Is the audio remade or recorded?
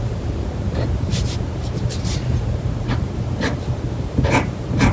remade